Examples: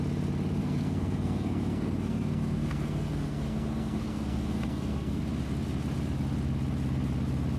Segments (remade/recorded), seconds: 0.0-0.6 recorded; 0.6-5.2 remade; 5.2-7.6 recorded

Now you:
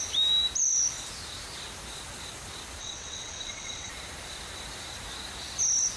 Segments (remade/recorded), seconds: 0.0-2.8 recorded; 2.8-3.9 remade; 3.9-6.0 recorded

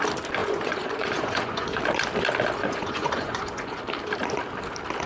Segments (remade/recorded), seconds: 0.0-0.4 recorded; 0.4-1.8 remade; 1.8-2.6 recorded; 2.6-3.8 remade; 3.8-5.1 recorded

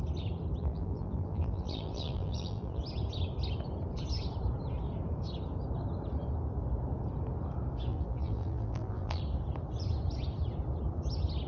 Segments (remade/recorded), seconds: 0.0-0.6 recorded; 0.6-2.8 remade; 2.8-7.9 recorded; 7.9-9.2 remade; 9.2-11.5 recorded

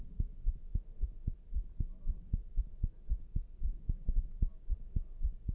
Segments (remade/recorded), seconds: 0.0-5.5 recorded